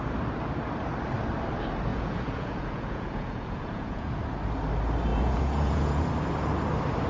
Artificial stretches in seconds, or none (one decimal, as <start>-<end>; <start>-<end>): 1.9-4.2; 5.1-6.1